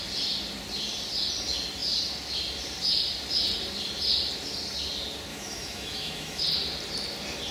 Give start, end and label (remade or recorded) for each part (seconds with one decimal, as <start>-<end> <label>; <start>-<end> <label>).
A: 0.0-5.3 recorded; 5.3-6.4 remade; 6.4-7.5 recorded